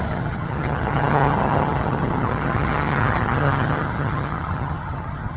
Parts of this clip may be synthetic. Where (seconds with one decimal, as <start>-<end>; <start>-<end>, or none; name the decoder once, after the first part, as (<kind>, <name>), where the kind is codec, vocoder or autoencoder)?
0.0-5.4 (vocoder, HiFi-GAN)